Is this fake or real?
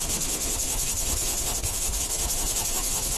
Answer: fake